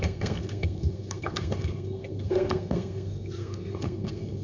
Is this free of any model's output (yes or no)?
no